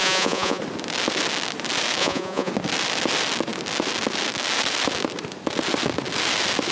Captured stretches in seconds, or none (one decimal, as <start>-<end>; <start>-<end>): 0.6-2.0; 2.5-6.7